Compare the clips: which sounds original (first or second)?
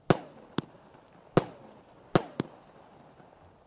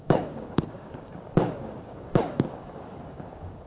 first